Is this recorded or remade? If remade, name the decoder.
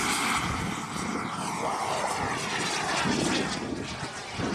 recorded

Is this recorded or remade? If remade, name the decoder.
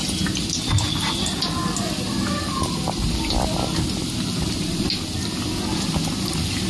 recorded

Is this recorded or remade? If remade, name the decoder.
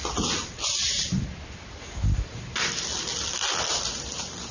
recorded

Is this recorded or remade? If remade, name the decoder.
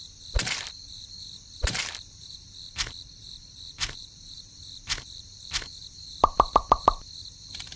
remade, vocoder, BigVGAN v2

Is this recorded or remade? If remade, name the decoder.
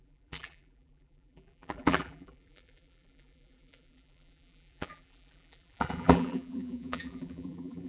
remade, vocoder, BigVGAN v2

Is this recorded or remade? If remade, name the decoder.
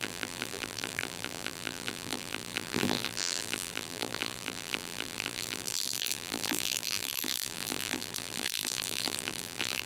remade, vocoder, BigVGAN v2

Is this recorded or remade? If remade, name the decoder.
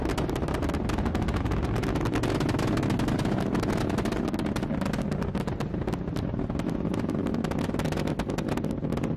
recorded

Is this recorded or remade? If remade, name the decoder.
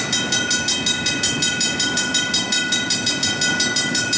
recorded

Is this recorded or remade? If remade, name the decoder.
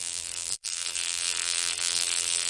remade, vocoder, BigVGAN v2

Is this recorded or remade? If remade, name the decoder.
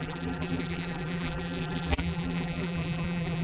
remade, vocoder, BigVGAN v2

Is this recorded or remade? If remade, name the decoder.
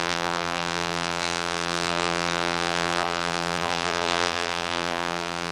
remade, vocoder, BigVGAN v2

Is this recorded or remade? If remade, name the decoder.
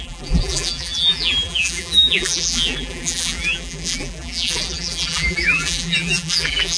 remade, vocoder, BigVGAN v2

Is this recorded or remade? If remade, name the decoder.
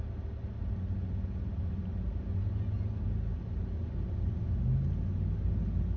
recorded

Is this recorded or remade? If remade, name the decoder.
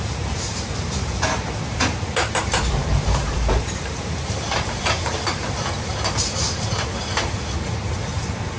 remade, vocoder, BigVGAN v2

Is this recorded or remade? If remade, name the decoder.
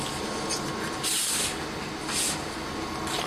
recorded